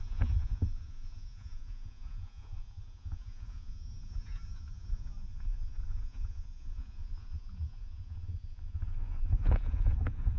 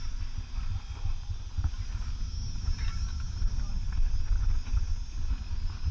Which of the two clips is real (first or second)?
second